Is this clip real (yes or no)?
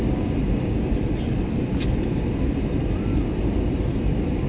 yes